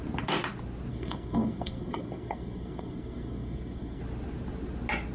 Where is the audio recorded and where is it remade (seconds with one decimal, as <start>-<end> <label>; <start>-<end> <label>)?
0.0-0.9 recorded; 0.9-4.0 remade; 4.0-5.1 recorded